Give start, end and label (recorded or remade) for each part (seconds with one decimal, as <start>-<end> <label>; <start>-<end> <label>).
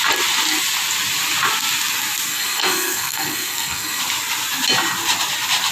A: 0.0-2.3 recorded; 2.3-4.0 remade; 4.0-5.7 recorded